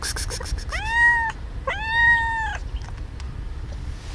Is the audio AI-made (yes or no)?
no